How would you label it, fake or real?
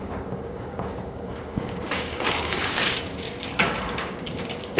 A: fake